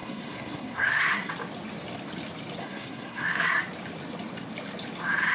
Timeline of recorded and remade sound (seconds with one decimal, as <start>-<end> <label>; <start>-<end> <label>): 0.0-1.3 remade; 1.3-2.6 recorded; 2.6-3.6 remade; 3.6-5.3 recorded